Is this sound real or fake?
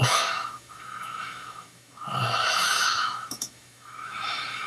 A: fake